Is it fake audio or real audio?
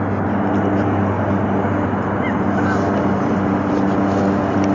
real